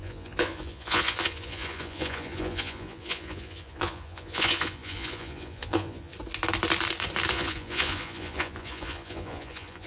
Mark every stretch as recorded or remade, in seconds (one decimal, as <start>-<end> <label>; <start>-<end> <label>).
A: 0.0-6.1 remade; 6.1-7.3 recorded; 7.3-9.9 remade